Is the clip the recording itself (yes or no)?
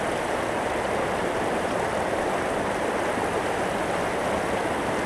yes